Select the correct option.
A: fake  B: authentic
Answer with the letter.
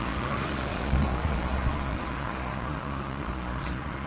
A